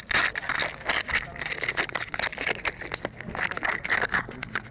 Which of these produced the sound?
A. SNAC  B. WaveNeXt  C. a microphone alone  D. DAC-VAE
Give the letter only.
C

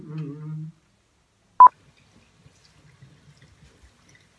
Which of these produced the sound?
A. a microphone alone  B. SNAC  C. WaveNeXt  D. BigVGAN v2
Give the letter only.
A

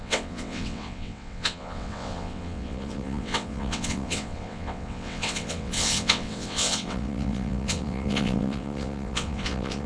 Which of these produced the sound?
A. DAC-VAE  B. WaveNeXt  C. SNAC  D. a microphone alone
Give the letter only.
B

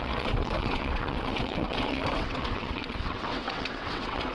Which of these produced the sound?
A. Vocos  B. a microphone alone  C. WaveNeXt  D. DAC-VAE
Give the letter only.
C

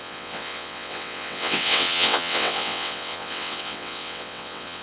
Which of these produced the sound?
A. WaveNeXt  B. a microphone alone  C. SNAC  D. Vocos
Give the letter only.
A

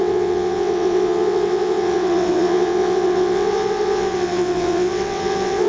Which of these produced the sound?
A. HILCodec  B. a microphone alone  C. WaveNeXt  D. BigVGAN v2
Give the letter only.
C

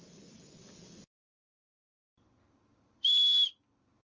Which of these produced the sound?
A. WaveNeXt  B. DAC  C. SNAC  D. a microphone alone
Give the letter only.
D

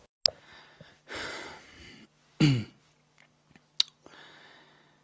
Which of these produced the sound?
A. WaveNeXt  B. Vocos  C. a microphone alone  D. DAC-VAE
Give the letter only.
C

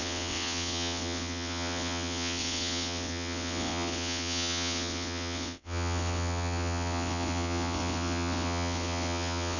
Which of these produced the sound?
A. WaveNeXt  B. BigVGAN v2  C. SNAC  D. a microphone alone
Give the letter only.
A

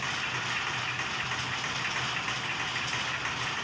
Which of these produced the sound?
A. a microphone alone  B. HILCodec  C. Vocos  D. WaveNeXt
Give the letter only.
A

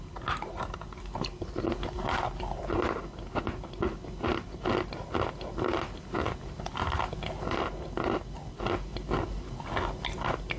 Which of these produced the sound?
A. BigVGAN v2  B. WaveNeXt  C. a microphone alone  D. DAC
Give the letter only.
C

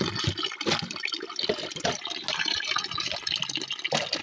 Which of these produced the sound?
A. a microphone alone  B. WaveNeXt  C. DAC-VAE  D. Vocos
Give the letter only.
A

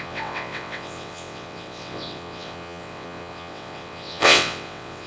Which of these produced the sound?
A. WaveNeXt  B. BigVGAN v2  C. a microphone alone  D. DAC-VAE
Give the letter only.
A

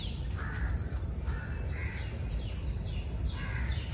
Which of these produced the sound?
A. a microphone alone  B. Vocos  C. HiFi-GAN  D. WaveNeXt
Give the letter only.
A